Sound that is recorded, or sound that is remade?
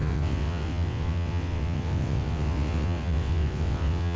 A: remade